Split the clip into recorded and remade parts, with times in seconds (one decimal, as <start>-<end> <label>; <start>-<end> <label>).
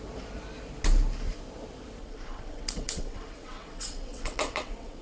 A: 0.0-2.0 recorded; 2.0-5.0 remade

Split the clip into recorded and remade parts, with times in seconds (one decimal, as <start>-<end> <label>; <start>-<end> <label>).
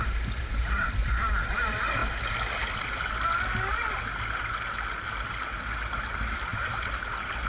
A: 0.0-1.3 remade; 1.3-6.5 recorded; 6.5-7.1 remade; 7.1-7.5 recorded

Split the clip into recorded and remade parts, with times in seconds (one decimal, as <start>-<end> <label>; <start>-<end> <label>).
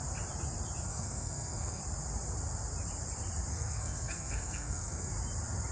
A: 0.0-0.9 recorded; 0.9-1.8 remade; 1.8-3.5 recorded; 3.5-5.1 remade; 5.1-5.7 recorded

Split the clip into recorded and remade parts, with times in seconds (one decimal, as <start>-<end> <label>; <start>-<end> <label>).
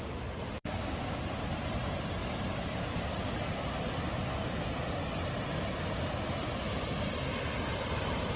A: 0.0-0.6 recorded; 0.6-1.2 remade; 1.2-8.4 recorded